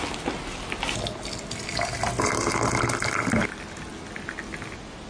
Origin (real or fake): real